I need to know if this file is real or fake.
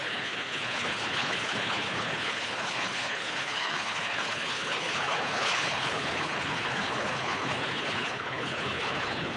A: fake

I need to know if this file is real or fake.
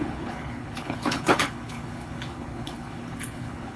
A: fake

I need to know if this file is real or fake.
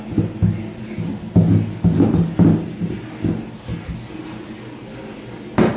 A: real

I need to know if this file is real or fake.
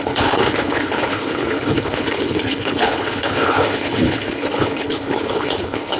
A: fake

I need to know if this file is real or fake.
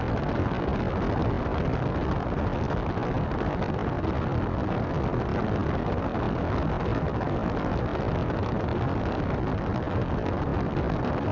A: real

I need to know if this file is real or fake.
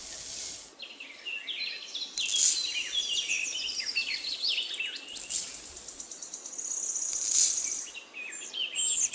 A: real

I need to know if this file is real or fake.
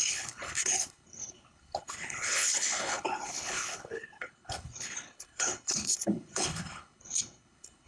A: fake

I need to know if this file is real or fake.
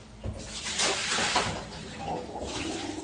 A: real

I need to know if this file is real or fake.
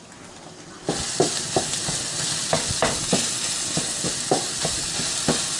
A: real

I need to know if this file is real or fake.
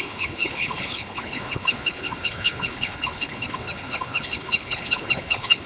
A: fake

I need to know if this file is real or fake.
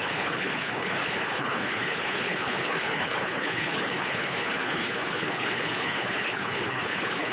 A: fake